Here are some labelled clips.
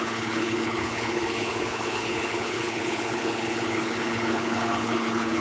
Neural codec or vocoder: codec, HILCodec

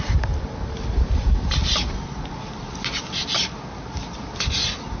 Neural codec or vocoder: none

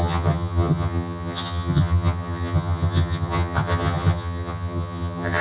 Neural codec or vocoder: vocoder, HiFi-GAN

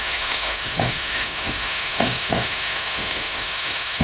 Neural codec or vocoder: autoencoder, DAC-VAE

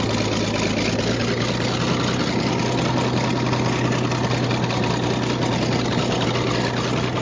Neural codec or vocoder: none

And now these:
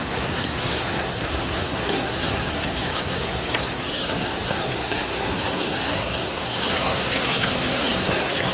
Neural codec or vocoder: codec, SNAC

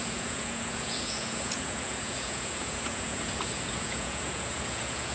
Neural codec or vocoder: vocoder, Vocos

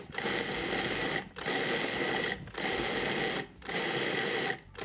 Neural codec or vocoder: none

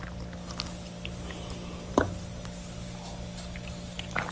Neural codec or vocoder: none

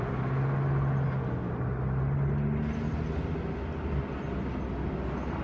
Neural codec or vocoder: none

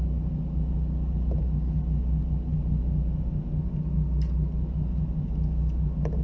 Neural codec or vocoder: none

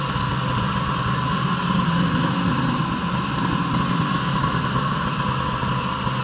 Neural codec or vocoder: none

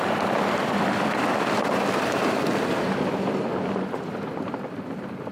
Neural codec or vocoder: none